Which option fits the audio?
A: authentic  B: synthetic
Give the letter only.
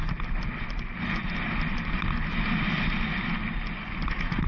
A